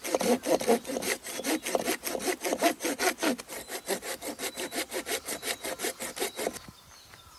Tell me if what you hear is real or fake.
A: real